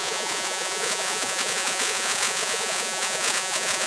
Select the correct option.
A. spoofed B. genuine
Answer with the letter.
A